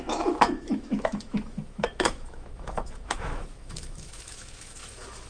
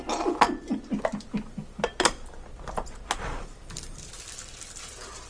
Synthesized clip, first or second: first